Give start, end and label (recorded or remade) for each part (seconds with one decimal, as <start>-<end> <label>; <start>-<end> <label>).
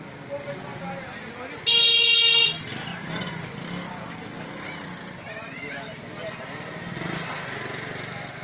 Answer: 0.0-2.9 recorded; 2.9-3.4 remade; 3.4-8.4 recorded